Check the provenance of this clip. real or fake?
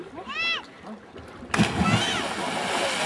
real